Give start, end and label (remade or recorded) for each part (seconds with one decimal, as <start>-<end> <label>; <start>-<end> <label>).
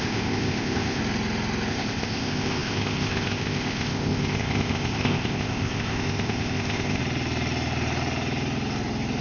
0.0-1.0 remade; 1.0-1.7 recorded; 1.7-7.0 remade; 7.0-9.2 recorded